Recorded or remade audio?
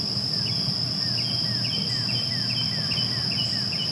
recorded